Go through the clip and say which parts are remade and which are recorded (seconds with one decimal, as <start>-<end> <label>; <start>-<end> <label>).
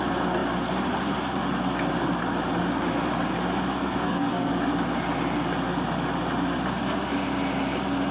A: 0.0-3.7 recorded; 3.7-4.5 remade; 4.5-8.1 recorded